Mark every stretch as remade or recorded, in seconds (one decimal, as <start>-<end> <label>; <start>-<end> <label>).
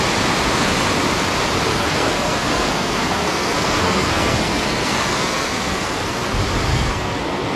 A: 0.0-1.7 recorded; 1.7-6.3 remade; 6.3-6.7 recorded; 6.7-7.6 remade